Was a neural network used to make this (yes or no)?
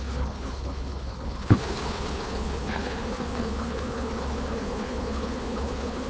yes